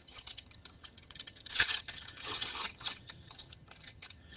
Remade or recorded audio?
remade